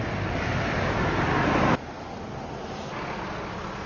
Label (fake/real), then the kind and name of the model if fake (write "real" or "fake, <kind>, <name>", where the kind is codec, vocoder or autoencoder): real